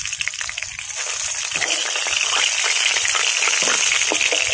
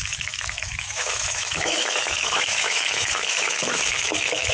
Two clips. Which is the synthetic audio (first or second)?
second